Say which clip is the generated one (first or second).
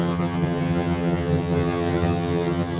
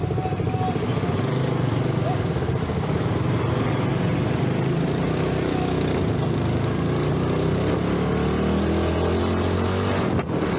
first